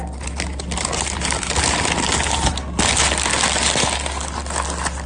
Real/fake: real